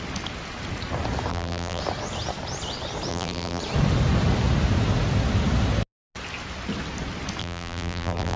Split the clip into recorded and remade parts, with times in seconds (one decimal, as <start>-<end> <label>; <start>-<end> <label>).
0.0-1.3 recorded; 1.3-1.8 remade; 1.8-3.1 recorded; 3.1-3.6 remade; 3.6-7.4 recorded; 7.4-8.4 remade